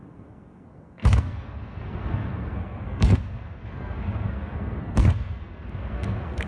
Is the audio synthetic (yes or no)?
yes